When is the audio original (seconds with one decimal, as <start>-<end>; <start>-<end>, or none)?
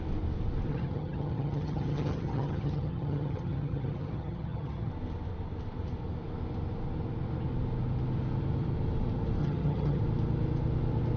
0.0-0.7; 4.9-9.4; 10.0-11.2